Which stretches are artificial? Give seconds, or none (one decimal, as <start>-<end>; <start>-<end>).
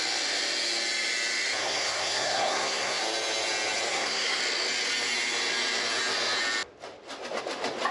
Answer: 1.6-3.0; 3.9-4.4